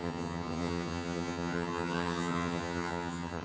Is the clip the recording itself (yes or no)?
no